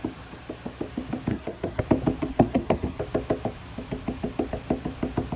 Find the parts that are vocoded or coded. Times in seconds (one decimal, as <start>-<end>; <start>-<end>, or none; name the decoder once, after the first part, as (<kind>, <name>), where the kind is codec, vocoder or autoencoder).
1.3-1.8 (codec, SNAC); 2.3-3.0